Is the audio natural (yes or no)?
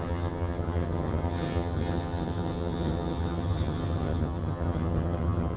no